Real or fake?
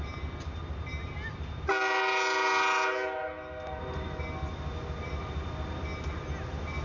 real